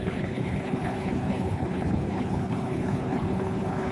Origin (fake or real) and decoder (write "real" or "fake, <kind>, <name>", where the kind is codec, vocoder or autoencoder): fake, codec, HILCodec